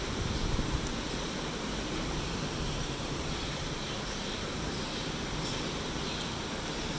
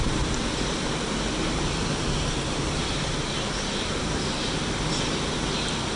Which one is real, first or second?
second